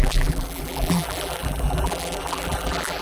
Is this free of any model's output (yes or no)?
no